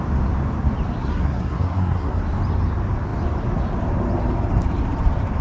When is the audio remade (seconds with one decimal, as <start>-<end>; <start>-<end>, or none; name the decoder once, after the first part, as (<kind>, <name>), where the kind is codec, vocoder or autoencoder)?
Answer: 1.0-2.2 (codec, SNAC)